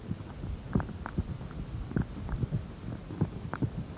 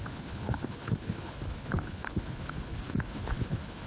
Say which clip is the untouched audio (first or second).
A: first